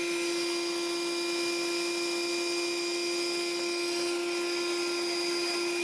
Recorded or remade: recorded